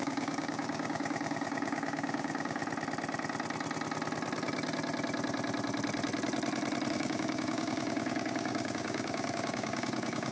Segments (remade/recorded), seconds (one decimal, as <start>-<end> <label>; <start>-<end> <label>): 0.0-2.6 remade; 2.6-6.9 recorded; 6.9-10.3 remade